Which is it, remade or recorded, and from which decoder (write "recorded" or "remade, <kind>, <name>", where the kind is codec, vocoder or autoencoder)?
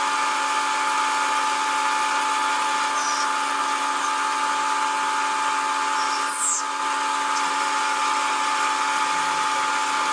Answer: recorded